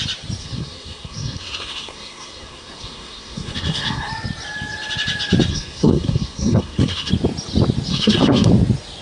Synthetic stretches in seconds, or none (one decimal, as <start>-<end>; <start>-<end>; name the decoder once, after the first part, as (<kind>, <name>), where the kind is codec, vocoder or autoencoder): 0.4-4.1 (codec, SNAC); 5.5-7.1; 7.9-8.5